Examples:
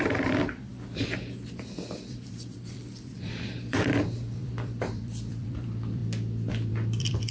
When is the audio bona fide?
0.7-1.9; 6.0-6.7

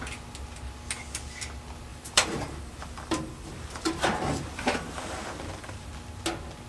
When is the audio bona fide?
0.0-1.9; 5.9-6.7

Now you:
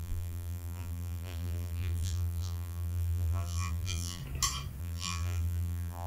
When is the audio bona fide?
4.2-4.8

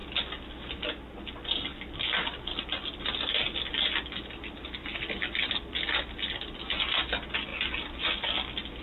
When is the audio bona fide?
0.0-4.9; 5.5-8.8